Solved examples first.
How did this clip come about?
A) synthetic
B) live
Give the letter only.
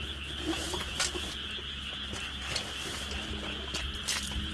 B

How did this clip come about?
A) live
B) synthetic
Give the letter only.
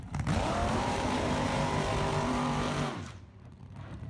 B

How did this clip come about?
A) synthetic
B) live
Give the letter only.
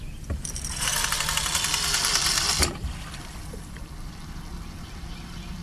A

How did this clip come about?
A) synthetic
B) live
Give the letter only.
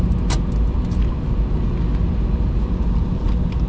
B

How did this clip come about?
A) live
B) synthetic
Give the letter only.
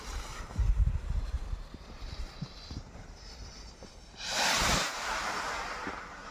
B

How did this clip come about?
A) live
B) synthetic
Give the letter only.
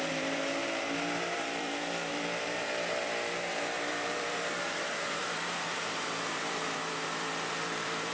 B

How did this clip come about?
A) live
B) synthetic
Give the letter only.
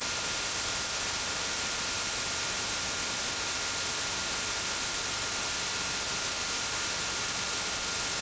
A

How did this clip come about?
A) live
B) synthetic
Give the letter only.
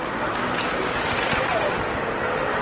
A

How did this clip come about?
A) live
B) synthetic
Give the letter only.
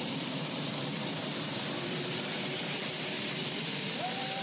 B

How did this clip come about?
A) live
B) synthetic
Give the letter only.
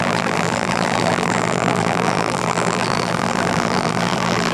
B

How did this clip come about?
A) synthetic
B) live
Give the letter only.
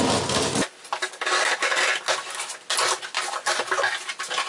B